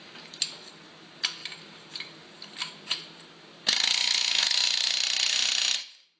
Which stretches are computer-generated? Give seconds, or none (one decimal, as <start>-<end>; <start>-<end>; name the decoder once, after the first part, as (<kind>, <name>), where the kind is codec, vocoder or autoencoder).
none

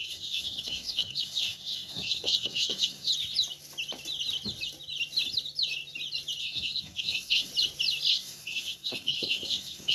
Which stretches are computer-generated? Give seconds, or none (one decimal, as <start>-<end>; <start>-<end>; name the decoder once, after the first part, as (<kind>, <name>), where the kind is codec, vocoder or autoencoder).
0.0-3.1 (codec, SNAC); 6.4-7.5; 8.1-9.9

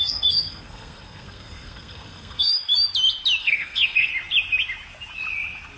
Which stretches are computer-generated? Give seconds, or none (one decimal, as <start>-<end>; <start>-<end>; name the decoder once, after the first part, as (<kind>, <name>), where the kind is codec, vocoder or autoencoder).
0.0-2.5 (codec, SNAC); 3.4-4.1

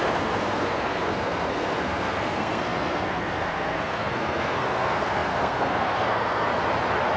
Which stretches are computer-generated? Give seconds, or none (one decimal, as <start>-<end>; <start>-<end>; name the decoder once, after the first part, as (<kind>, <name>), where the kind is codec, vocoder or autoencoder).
0.0-6.5 (codec, SNAC)

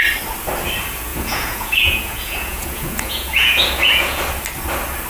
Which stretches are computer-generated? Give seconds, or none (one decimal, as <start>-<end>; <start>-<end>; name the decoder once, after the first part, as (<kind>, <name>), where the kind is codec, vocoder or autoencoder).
1.1-4.2 (vocoder, Vocos)

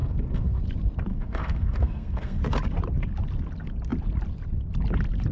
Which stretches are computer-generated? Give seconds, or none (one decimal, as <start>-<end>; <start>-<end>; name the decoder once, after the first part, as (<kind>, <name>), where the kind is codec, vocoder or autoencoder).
0.0-0.6 (codec, SNAC); 1.1-2.4

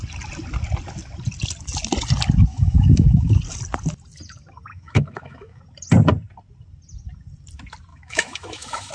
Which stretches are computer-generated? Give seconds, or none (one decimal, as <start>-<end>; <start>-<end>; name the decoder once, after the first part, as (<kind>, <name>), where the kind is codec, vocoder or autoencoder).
2.5-3.4 (autoencoder, DAC-VAE); 4.7-5.6; 7.9-8.9

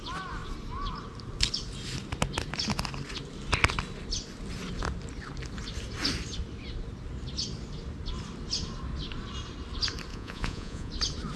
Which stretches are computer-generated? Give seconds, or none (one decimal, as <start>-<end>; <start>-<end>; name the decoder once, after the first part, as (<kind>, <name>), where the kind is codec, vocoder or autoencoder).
10.1-10.9 (vocoder, Vocos)